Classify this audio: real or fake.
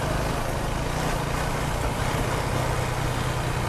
real